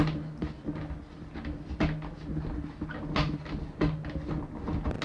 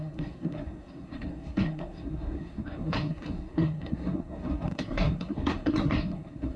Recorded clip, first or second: first